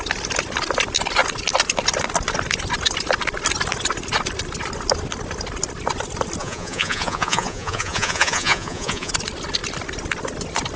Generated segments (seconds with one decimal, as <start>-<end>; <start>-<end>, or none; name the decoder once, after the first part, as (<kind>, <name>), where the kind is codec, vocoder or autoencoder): 6.4-9.1 (vocoder, Vocos)